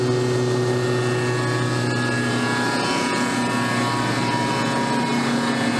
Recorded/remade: recorded